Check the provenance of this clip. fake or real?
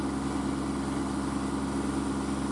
real